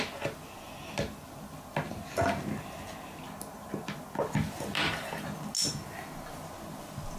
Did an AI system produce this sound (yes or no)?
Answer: no